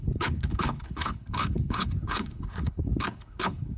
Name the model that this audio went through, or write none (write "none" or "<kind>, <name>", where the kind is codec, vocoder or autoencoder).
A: codec, HILCodec